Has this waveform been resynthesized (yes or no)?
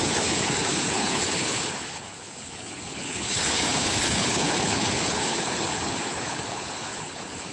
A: yes